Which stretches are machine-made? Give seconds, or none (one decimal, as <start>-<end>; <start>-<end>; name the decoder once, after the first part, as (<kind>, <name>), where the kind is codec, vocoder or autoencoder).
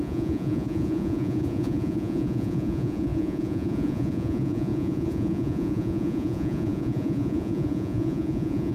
0.0-8.7 (vocoder, Vocos)